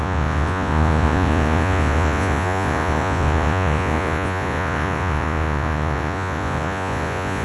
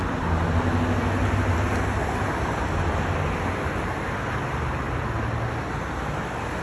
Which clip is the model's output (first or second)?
first